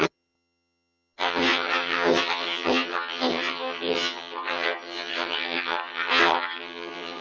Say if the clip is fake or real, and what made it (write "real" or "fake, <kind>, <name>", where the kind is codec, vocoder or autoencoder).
fake, vocoder, HiFi-GAN